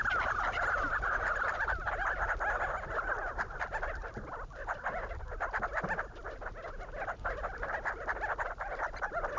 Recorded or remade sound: recorded